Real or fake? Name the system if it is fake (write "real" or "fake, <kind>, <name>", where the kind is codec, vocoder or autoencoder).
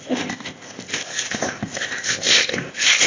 fake, codec, ZipCodec